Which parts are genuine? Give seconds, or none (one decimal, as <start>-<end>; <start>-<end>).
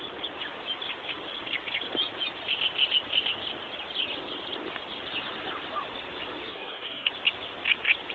0.0-6.5; 7.1-8.1